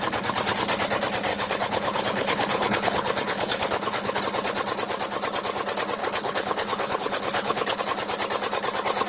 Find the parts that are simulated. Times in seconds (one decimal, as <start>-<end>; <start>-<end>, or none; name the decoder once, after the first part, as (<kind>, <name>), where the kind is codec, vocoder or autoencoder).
1.3-4.2 (codec, HILCodec); 6.0-7.8